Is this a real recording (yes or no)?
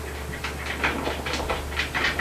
yes